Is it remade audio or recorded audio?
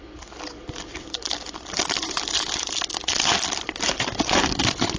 recorded